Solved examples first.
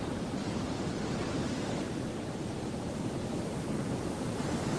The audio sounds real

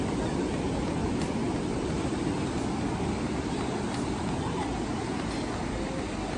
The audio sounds real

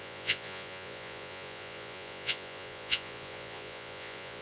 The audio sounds fake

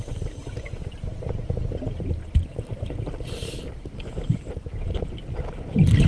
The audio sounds real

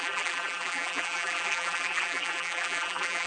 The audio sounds fake